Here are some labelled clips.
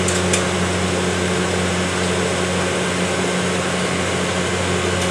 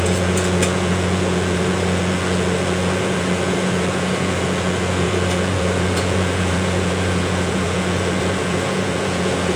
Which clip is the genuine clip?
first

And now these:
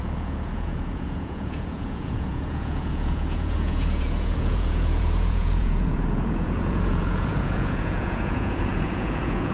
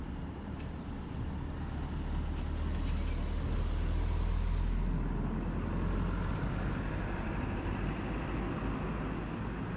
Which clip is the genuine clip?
second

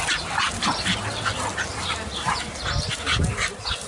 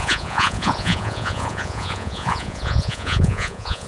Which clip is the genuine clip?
first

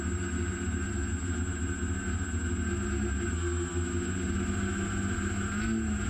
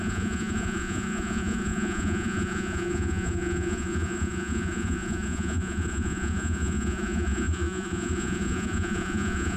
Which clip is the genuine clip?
first